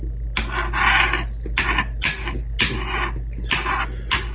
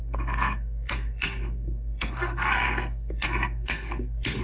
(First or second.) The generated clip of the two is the second